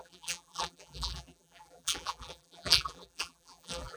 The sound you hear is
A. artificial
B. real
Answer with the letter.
A